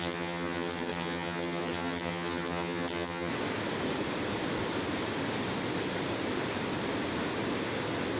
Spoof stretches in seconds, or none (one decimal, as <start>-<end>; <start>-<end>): 0.0-3.3